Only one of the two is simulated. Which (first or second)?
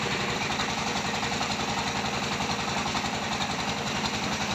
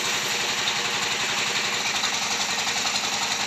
first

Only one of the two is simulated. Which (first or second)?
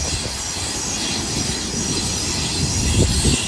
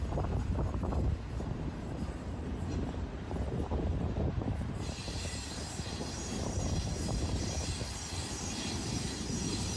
second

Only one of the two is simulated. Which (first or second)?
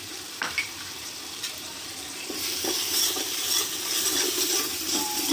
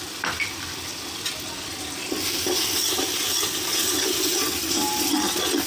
first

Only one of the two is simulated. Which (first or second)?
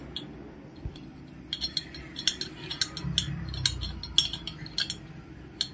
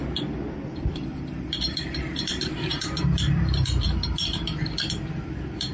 second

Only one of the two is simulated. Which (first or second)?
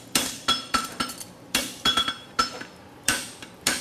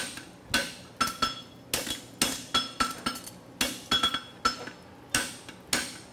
first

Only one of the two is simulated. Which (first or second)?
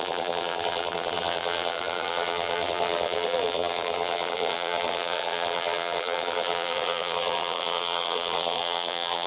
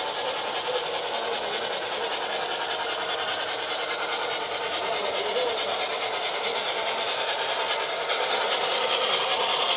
first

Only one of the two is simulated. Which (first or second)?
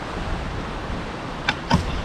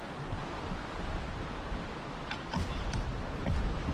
first